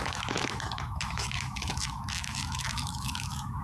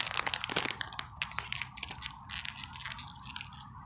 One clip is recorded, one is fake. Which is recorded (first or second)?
second